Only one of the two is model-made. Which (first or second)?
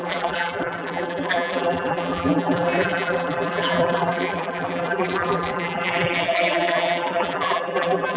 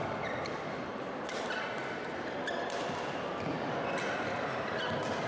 first